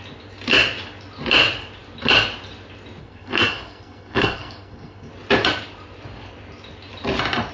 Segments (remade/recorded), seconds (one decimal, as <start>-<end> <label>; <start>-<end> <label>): 0.0-3.0 recorded; 3.0-5.1 remade; 5.1-7.5 recorded